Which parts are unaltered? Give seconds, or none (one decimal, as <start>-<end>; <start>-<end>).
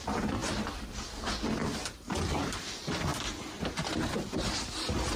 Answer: 0.0-0.4; 0.9-3.1; 3.6-5.2